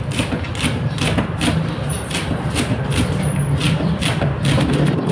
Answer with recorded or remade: recorded